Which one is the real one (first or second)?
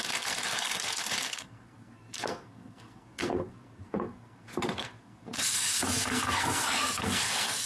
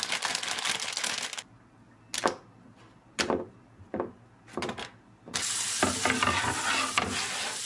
second